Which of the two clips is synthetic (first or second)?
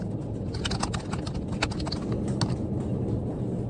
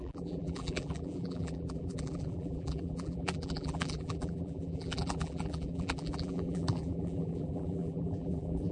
second